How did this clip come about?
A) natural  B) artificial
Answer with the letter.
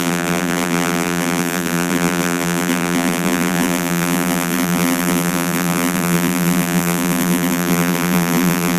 B